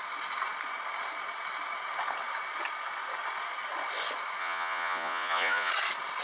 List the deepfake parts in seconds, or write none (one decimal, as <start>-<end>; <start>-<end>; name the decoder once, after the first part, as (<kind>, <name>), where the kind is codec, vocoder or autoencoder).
4.4-5.7 (vocoder, Vocos)